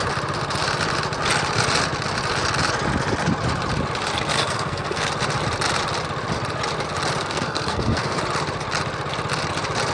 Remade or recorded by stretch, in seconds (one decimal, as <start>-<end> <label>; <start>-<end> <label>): 0.0-4.3 recorded; 4.3-5.1 remade; 5.1-7.2 recorded; 7.2-8.2 remade; 8.2-9.9 recorded